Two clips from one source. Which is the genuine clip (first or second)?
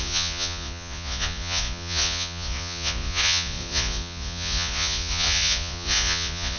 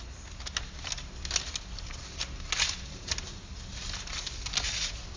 second